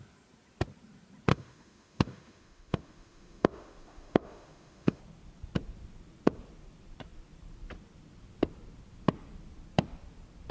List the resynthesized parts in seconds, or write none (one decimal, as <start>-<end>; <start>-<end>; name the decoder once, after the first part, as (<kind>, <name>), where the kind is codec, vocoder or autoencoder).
1.3-5.0 (autoencoder, DAC-VAE)